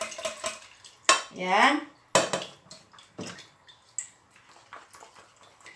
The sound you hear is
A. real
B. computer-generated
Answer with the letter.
A